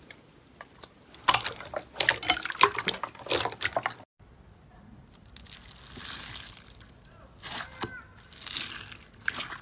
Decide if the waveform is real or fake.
real